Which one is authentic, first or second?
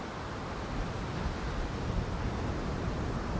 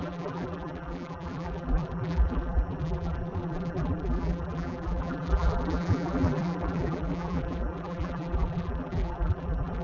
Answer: first